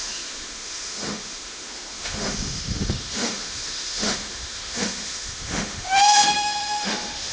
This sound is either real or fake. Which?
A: fake